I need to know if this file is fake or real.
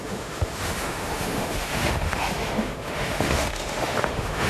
fake